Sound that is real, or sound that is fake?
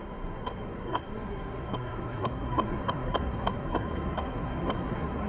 fake